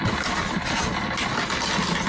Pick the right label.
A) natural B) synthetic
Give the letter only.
A